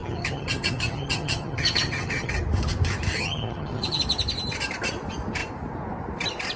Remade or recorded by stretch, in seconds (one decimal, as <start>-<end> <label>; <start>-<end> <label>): 0.0-2.3 remade; 2.3-3.1 recorded; 3.1-4.0 remade; 4.0-6.6 recorded